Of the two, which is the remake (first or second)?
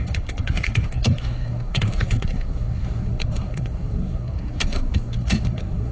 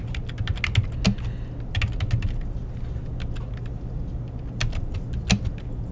first